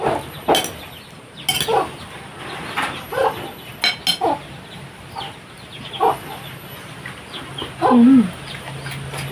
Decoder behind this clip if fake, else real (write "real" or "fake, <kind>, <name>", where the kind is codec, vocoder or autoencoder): real